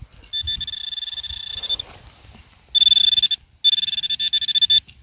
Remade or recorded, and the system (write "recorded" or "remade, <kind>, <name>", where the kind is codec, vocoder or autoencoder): recorded